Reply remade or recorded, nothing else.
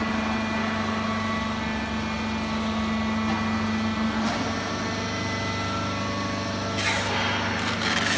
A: recorded